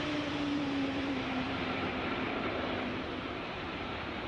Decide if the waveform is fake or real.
fake